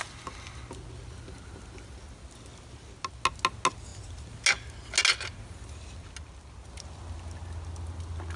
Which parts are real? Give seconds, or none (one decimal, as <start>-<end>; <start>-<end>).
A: 0.0-8.4